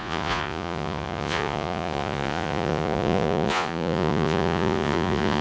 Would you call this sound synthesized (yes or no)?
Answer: yes